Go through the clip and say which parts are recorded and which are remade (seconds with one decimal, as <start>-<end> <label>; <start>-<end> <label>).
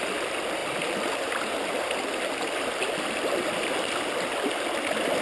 0.0-5.2 recorded